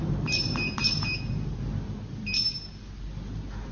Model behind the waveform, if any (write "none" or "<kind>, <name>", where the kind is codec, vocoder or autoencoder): none